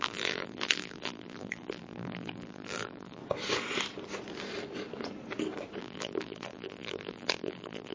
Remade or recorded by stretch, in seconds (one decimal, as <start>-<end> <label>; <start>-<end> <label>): 0.0-3.2 remade; 3.2-5.8 recorded; 5.8-7.9 remade